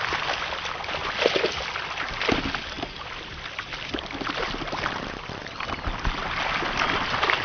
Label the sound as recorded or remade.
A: recorded